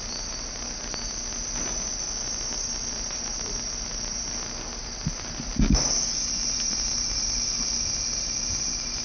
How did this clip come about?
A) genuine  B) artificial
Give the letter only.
A